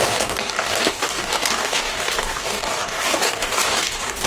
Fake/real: fake